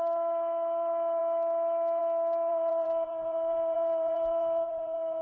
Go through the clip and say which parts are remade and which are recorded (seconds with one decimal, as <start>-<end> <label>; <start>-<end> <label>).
0.0-2.5 recorded; 2.5-5.2 remade